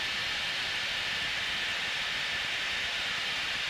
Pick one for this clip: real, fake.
real